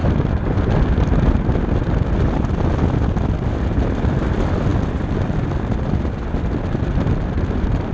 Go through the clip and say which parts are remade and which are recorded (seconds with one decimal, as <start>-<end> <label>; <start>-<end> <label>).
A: 0.0-7.9 recorded